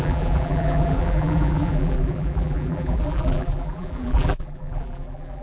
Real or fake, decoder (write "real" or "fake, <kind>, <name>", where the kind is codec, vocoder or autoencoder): fake, vocoder, BigVGAN v2